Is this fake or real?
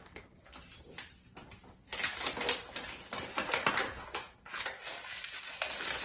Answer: real